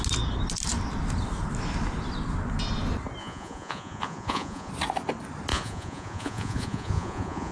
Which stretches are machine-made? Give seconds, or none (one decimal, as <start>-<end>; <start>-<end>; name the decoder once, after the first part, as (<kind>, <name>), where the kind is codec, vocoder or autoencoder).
3.2-4.7 (vocoder, Vocos); 5.5-7.5